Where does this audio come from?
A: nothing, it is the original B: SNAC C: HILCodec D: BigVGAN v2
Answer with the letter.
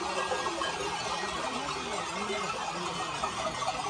A